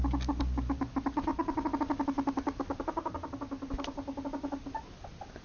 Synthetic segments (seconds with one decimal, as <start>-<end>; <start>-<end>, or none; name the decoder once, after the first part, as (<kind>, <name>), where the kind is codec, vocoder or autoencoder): none